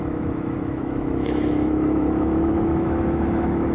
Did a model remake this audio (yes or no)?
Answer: yes